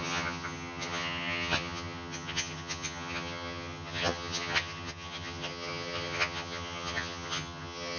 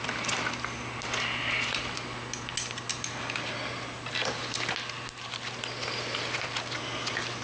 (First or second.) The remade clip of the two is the first